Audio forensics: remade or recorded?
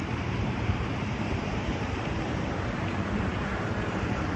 remade